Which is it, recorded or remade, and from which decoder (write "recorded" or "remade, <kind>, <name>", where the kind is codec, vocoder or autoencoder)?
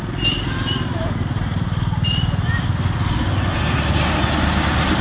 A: recorded